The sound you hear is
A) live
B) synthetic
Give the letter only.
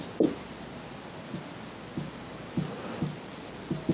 A